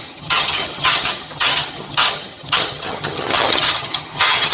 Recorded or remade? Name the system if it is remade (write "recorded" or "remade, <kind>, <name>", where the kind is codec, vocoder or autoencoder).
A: remade, vocoder, HiFi-GAN